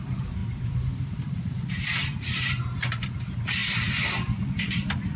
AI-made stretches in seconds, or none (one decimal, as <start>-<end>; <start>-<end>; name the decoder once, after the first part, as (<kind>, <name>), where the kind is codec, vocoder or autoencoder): 0.4-1.7 (vocoder, BigVGAN v2)